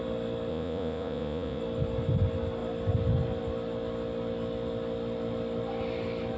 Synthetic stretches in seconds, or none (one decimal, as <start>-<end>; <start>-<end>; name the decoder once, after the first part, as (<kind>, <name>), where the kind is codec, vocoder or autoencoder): 0.5-1.6 (vocoder, Vocos)